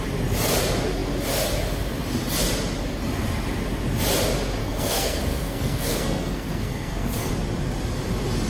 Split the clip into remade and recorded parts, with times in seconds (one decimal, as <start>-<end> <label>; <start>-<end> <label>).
0.0-4.6 recorded; 4.6-7.3 remade; 7.3-8.5 recorded